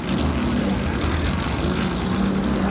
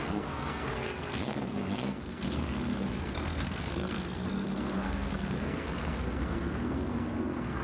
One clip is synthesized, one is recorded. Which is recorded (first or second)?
first